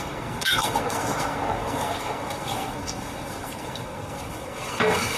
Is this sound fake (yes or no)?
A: yes